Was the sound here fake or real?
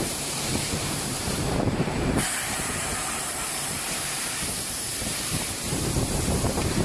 fake